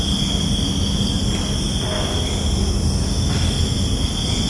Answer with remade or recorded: recorded